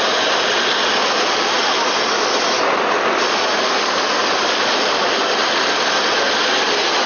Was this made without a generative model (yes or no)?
yes